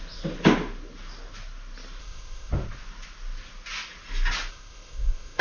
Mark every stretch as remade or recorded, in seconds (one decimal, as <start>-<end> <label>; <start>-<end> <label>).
0.0-2.0 recorded; 2.0-2.5 remade; 2.5-4.5 recorded; 4.5-5.4 remade